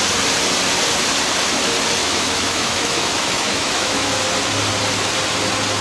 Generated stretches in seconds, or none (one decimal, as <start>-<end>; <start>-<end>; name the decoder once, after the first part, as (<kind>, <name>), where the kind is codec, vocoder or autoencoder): 2.0-4.2 (autoencoder, DAC-VAE)

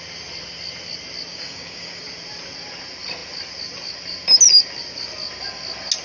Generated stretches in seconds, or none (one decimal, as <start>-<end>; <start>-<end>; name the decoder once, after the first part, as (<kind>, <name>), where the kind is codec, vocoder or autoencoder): 1.3-2.0 (codec, DAC)